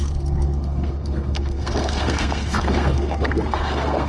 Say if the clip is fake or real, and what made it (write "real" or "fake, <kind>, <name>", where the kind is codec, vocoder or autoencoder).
fake, codec, SNAC